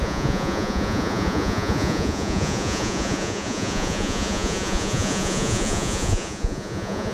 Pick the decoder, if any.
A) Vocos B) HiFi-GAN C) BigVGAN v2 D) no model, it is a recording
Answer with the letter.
A